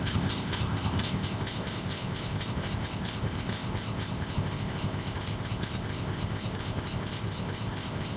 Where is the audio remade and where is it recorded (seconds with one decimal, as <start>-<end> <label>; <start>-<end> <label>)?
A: 0.0-8.2 remade